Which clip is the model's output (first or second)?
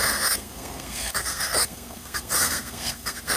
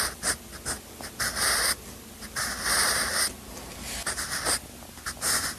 first